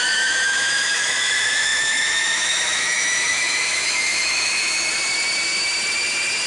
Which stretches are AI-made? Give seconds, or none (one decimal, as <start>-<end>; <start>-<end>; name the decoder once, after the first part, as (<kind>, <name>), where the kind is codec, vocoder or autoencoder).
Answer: 0.0-4.9 (autoencoder, DAC-VAE)